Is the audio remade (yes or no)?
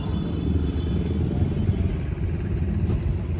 no